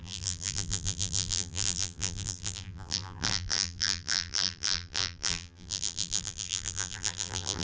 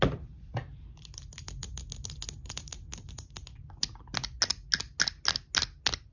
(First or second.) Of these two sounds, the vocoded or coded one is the first